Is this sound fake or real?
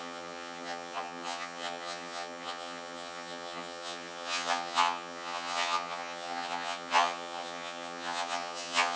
fake